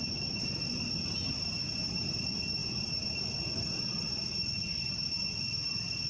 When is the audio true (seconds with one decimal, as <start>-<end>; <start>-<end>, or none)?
0.0-1.6; 2.2-6.1